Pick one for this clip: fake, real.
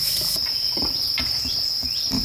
real